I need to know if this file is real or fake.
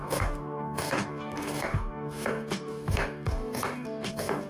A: fake